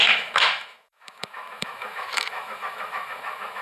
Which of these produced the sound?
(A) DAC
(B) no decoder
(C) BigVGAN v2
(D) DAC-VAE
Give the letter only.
D